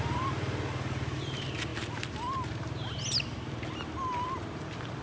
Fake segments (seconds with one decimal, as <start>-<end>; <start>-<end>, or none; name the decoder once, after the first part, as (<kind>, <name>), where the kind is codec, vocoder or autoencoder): none